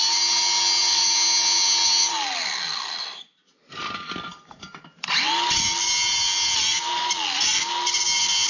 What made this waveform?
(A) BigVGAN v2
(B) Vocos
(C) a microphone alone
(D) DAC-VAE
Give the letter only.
C